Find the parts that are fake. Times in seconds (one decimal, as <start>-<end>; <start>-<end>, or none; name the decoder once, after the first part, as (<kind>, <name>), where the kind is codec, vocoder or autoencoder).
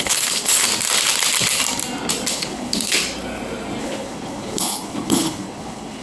0.0-0.7 (codec, HILCodec); 2.3-3.0; 3.8-6.0